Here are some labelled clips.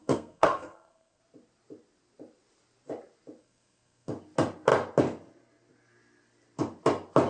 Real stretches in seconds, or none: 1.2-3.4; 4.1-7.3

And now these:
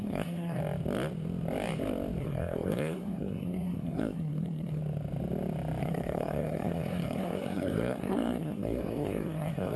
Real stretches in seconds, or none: 0.6-2.2; 4.8-5.8

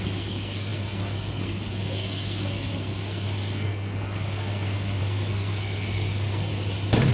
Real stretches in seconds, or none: 6.5-7.1

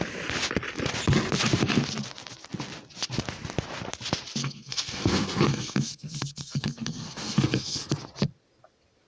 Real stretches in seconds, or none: 0.0-4.4; 7.9-9.1

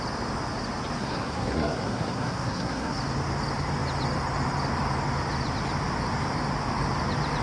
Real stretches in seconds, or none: 0.0-1.0; 3.0-7.4

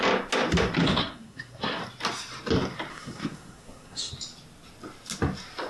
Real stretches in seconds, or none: 0.0-1.0; 1.8-2.9; 4.1-5.7